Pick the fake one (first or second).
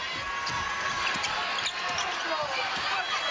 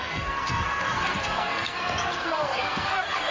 second